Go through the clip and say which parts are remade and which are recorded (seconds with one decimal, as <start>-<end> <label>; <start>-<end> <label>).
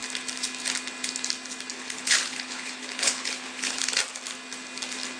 0.0-1.7 recorded; 1.7-3.8 remade; 3.8-5.2 recorded